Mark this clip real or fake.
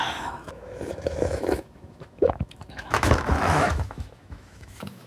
fake